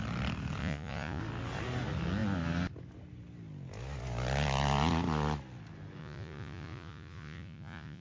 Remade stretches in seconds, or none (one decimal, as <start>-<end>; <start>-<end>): 0.6-1.2; 6.0-8.0